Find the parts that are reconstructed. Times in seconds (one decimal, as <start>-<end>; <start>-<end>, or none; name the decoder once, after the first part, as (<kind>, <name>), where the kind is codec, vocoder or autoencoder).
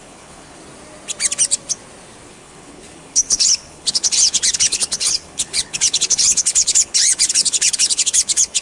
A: 0.0-0.6 (codec, HILCodec); 2.3-8.6